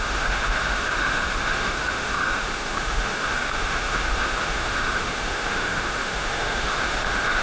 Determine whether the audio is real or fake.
fake